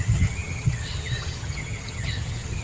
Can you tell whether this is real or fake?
fake